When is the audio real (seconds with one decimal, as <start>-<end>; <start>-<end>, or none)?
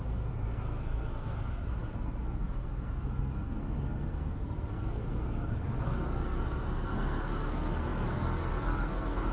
none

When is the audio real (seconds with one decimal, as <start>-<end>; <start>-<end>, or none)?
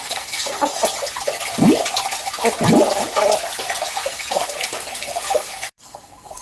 0.8-3.6